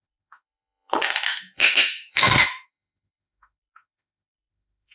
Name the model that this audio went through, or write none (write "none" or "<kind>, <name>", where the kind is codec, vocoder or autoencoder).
autoencoder, DAC-VAE